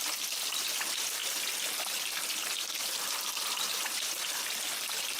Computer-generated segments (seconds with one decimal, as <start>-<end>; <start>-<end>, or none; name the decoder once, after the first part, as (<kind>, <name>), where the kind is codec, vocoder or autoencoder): none